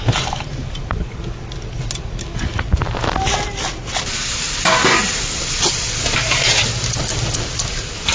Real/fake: real